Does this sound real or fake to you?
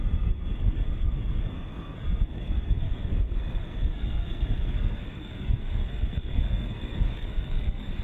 fake